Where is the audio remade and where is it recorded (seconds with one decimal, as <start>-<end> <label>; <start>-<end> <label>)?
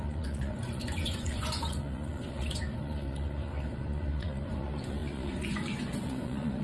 0.0-6.6 remade